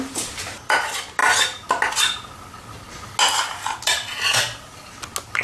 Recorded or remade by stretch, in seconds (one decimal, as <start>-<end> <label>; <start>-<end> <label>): 0.0-5.4 recorded